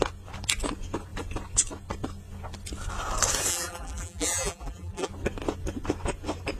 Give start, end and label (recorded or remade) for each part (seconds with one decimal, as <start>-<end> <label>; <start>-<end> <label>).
0.0-3.5 recorded; 3.5-5.1 remade; 5.1-6.6 recorded